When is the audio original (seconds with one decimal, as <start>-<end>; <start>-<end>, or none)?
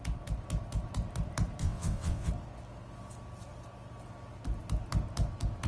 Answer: 0.0-1.6; 2.3-5.7